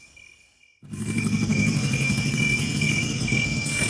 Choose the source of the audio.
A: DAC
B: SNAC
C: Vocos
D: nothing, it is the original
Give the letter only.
B